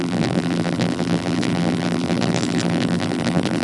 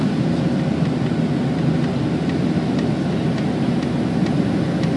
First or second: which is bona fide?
second